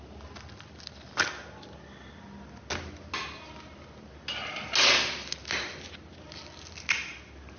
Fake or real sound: real